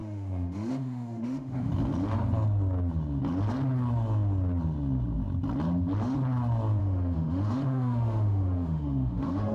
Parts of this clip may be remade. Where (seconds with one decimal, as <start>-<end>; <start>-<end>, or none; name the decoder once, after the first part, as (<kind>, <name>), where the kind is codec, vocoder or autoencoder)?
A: 0.0-1.7 (autoencoder, DAC-VAE); 6.8-9.5